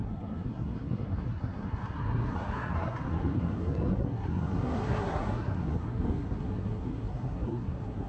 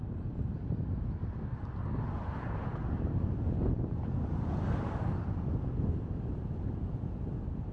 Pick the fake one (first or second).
first